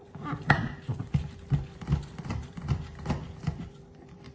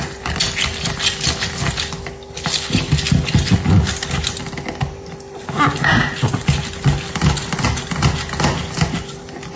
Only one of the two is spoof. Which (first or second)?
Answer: first